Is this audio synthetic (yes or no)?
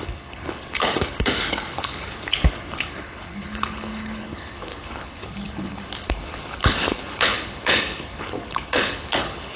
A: yes